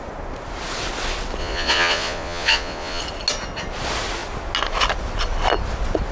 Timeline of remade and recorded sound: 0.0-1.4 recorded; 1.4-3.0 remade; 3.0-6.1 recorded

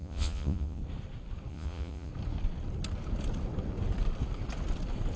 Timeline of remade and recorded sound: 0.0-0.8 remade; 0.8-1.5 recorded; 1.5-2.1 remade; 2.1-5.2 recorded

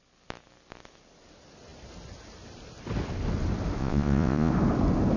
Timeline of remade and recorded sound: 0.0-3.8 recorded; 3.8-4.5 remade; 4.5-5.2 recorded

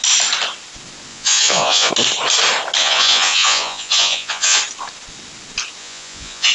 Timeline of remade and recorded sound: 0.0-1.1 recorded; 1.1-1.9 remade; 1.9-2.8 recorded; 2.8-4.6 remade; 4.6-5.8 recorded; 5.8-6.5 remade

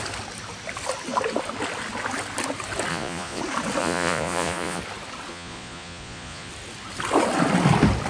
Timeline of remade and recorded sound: 0.0-2.9 recorded; 2.9-3.4 remade; 3.4-3.8 recorded; 3.8-4.8 remade; 4.8-5.3 recorded; 5.3-6.5 remade; 6.5-8.1 recorded

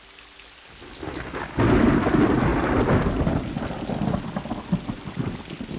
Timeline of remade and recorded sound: 0.0-5.8 recorded

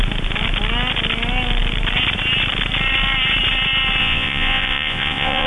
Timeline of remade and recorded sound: 0.0-4.0 recorded; 4.0-5.5 remade